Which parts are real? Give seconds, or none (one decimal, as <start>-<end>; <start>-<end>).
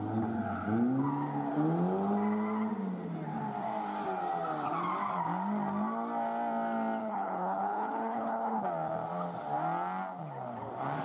0.0-7.0; 8.6-11.0